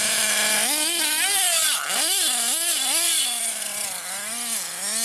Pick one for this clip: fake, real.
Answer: real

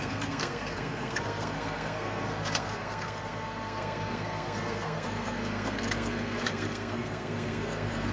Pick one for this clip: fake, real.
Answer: fake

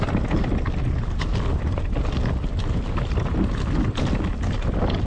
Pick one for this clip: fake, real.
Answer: real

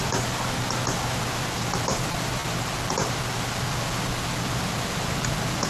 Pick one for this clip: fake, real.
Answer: real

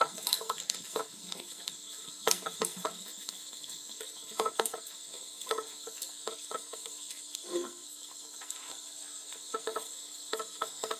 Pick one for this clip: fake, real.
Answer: fake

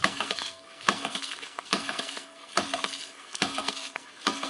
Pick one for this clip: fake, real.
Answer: fake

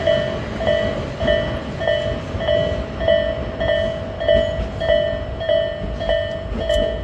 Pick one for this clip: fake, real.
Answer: real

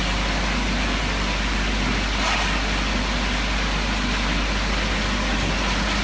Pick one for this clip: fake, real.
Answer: real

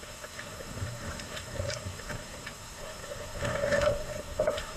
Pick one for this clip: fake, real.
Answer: fake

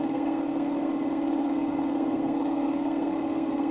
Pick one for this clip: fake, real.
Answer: fake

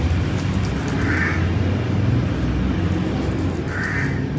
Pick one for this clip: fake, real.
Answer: real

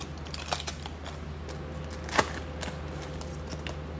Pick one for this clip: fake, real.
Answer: real